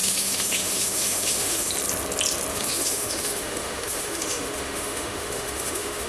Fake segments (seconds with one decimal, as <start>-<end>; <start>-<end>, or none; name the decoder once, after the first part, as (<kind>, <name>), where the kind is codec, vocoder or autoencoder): 0.0-1.7 (autoencoder, DAC-VAE); 2.5-6.1